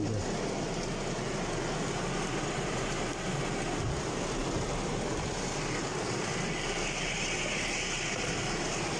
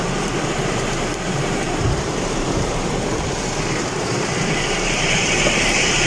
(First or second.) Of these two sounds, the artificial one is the second